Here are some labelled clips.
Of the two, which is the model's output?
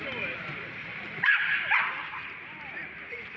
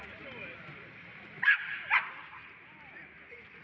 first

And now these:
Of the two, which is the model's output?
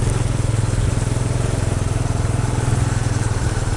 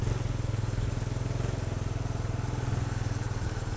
first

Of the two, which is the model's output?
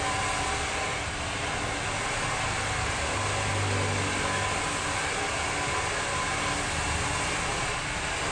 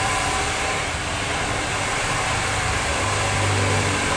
second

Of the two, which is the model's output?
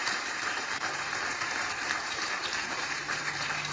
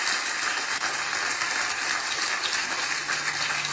first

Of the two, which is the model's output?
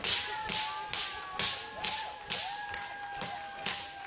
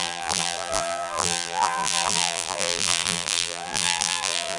second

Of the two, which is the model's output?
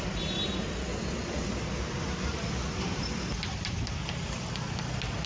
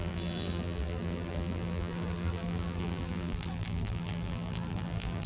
second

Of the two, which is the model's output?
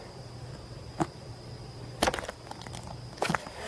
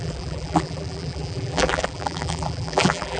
second